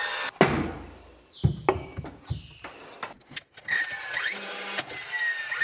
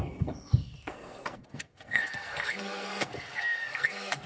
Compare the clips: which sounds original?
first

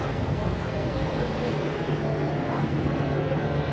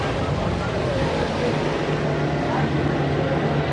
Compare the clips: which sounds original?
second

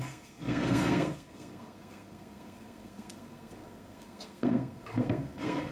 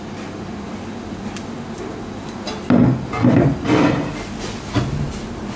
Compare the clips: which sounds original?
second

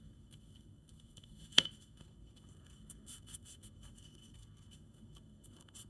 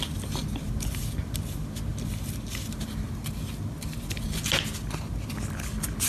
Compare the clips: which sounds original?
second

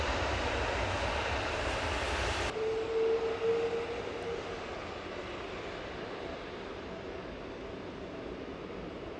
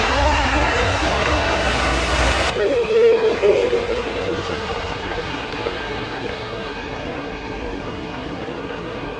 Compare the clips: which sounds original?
first